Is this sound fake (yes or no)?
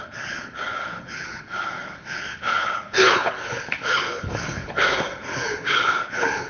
yes